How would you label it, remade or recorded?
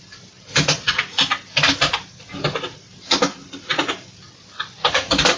recorded